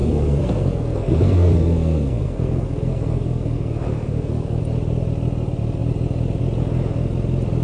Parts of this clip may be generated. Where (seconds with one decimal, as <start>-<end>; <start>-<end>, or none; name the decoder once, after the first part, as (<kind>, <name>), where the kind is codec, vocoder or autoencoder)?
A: 0.0-4.6 (codec, SNAC)